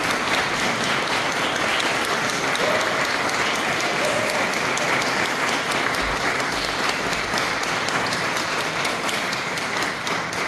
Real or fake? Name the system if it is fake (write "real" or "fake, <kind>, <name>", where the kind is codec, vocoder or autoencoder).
real